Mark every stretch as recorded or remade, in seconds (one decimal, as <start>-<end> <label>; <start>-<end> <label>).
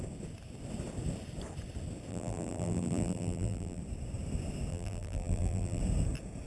0.0-2.1 recorded; 2.1-3.8 remade; 3.8-4.7 recorded; 4.7-5.8 remade; 5.8-6.5 recorded